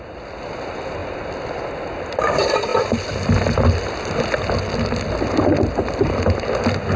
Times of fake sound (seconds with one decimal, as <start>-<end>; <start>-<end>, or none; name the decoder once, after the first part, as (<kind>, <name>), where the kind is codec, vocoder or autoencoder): none